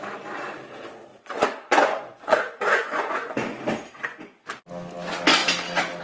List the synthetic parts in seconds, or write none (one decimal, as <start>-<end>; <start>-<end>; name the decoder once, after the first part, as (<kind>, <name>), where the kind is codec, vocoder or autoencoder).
1.1-3.6 (vocoder, Vocos)